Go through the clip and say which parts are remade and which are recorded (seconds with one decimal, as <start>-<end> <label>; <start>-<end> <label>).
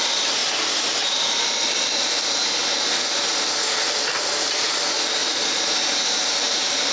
0.0-5.2 recorded; 5.2-6.9 remade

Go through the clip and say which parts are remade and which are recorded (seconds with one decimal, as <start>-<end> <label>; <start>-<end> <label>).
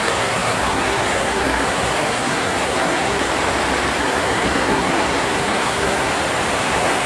0.0-3.3 remade; 3.3-4.0 recorded; 4.0-6.1 remade; 6.1-6.6 recorded; 6.6-7.1 remade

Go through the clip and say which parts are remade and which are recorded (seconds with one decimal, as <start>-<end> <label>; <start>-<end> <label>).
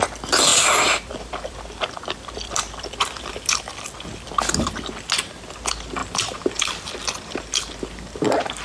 0.0-0.5 recorded; 0.5-3.3 remade; 3.3-8.6 recorded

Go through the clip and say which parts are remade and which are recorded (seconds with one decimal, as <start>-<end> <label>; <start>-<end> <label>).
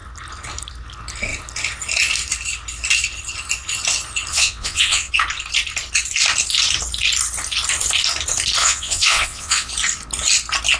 0.0-4.3 recorded; 4.3-5.1 remade; 5.1-8.6 recorded; 8.6-9.7 remade; 9.7-10.8 recorded